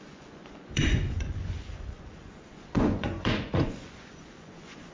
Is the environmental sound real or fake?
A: fake